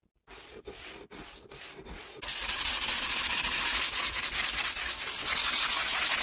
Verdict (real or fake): real